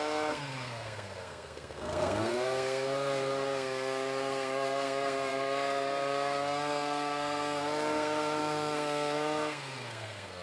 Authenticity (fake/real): fake